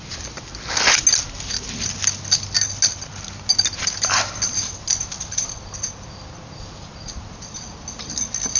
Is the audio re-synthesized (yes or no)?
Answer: no